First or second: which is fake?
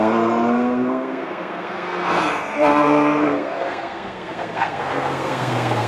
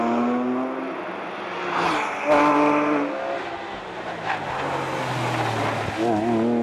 first